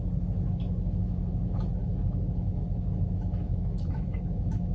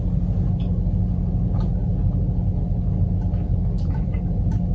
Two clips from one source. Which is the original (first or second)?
second